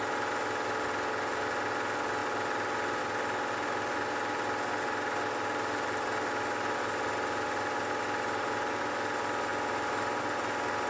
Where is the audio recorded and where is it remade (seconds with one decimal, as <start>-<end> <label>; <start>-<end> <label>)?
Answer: 0.0-10.9 recorded